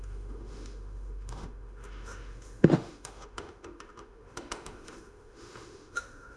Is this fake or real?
fake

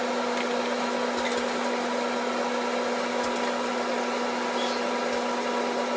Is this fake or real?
real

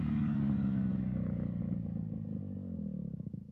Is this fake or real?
fake